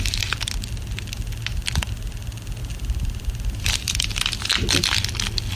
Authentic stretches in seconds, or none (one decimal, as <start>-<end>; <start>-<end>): 0.0-2.6; 4.2-5.6